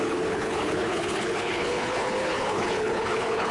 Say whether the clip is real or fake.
fake